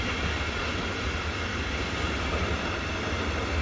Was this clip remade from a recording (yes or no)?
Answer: no